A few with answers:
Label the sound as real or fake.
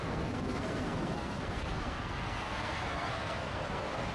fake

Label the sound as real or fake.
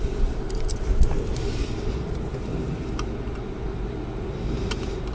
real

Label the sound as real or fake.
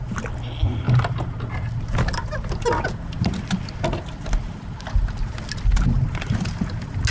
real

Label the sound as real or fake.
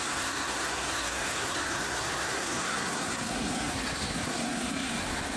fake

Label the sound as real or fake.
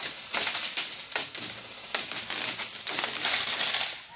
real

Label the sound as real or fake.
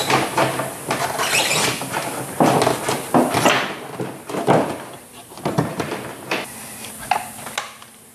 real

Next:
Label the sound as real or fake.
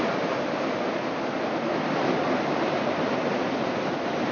real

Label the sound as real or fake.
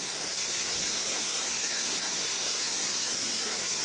fake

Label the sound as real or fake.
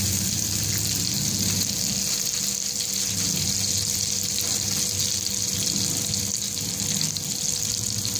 real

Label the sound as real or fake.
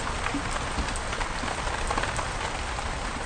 real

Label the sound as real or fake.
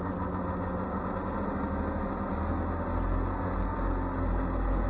real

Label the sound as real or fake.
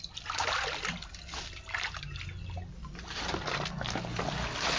real